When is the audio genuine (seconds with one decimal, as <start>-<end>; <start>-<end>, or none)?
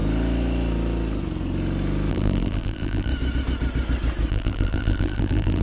0.0-2.1; 3.1-4.3